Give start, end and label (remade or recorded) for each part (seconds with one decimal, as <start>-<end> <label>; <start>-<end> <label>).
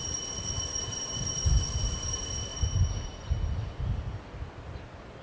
0.0-5.2 recorded